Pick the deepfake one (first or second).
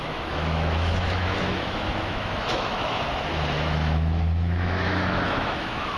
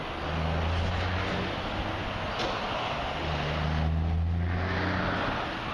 first